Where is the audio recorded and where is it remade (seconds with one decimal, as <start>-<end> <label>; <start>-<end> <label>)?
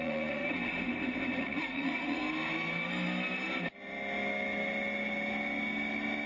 0.0-0.4 remade; 0.4-1.4 recorded; 1.4-2.2 remade; 2.2-6.3 recorded